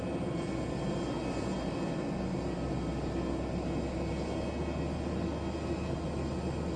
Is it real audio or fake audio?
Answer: real